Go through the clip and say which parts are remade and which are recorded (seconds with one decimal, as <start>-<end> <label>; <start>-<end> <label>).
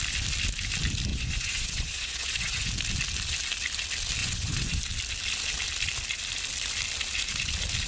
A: 0.0-1.1 recorded; 1.1-2.7 remade; 2.7-4.2 recorded; 4.2-4.8 remade; 4.8-7.9 recorded